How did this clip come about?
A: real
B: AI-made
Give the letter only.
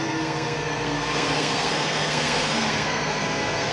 B